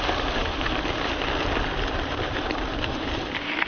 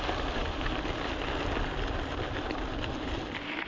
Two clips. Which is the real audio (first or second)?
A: second